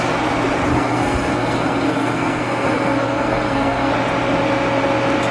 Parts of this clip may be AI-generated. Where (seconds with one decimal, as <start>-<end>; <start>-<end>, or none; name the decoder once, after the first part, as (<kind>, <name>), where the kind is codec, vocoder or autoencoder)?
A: 0.7-3.9 (codec, SNAC)